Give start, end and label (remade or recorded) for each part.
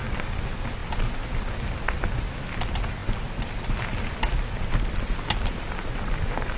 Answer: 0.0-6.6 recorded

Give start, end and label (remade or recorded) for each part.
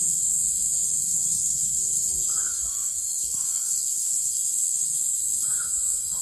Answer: 0.0-6.2 remade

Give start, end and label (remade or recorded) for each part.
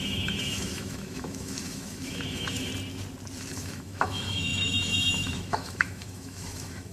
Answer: 0.0-2.7 remade; 2.7-3.5 recorded; 3.5-6.9 remade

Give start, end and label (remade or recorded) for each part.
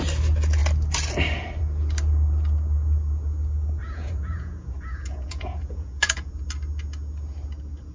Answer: 0.0-3.8 recorded; 3.8-6.3 remade; 6.3-7.9 recorded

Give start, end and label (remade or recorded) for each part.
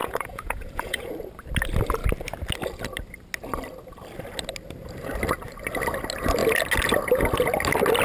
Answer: 0.0-1.1 remade; 1.1-8.0 recorded